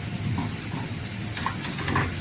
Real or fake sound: real